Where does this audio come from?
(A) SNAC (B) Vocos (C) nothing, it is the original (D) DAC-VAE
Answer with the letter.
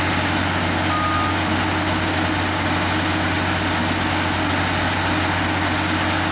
C